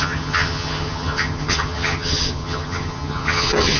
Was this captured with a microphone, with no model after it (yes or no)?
no